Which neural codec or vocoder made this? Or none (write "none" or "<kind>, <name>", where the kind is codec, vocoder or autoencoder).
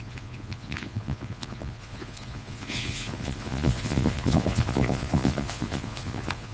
vocoder, Vocos